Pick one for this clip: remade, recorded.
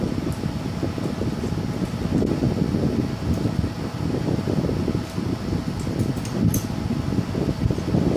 recorded